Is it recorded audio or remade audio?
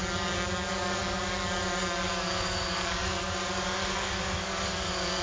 remade